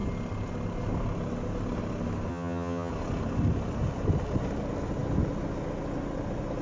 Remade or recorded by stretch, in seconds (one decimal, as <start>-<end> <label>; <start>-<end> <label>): 0.0-2.3 recorded; 2.3-2.9 remade; 2.9-6.6 recorded